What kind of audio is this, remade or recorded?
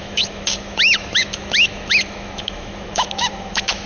remade